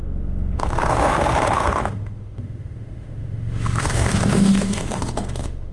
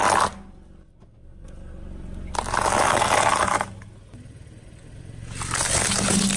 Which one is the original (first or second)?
second